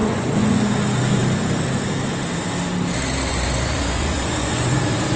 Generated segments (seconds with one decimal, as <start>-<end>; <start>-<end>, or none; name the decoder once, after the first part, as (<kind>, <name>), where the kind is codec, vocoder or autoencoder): 0.0-0.6 (vocoder, Vocos); 3.3-4.8